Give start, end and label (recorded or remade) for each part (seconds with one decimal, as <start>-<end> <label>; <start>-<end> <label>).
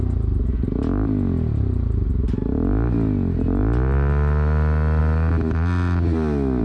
0.0-6.6 recorded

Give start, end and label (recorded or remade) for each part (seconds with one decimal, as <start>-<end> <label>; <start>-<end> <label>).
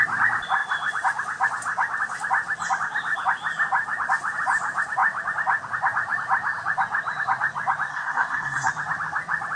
0.0-7.9 recorded; 7.9-8.7 remade; 8.7-9.6 recorded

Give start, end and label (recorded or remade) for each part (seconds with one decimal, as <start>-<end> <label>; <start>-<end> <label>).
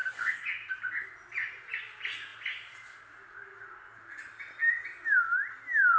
0.0-0.5 remade; 0.5-6.0 recorded